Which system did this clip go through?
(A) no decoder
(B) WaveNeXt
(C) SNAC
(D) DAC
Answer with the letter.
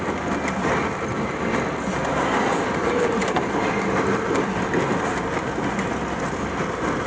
A